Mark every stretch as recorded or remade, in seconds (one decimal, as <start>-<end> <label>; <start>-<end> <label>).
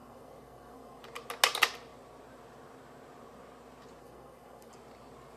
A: 0.0-1.0 remade; 1.0-4.0 recorded; 4.0-4.7 remade; 4.7-5.4 recorded